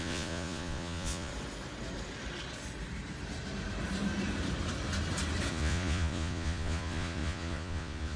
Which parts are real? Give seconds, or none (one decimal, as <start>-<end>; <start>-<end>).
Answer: 1.3-5.5